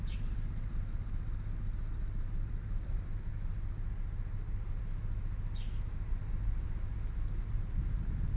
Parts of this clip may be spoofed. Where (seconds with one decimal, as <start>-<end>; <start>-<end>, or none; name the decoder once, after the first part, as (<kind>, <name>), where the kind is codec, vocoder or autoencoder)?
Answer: none

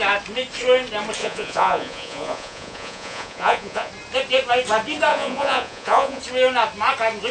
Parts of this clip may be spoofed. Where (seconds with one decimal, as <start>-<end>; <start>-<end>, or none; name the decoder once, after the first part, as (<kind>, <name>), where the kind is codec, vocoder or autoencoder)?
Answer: 1.2-3.9 (vocoder, Vocos); 5.1-6.2

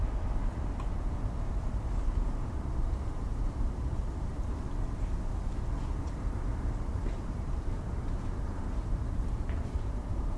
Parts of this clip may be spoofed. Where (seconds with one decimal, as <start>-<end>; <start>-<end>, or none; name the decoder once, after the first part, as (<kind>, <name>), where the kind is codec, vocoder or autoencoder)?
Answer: 0.0-0.4 (vocoder, BigVGAN v2); 2.4-4.3; 6.8-10.4